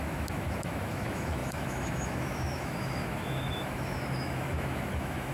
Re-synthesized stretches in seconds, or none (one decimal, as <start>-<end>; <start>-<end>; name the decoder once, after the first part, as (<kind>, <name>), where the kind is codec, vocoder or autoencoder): 0.0-5.3 (autoencoder, DAC-VAE)